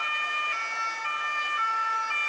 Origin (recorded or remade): recorded